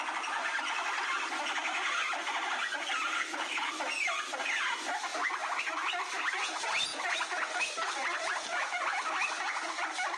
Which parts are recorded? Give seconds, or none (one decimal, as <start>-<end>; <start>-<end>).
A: 0.0-3.1; 3.7-10.2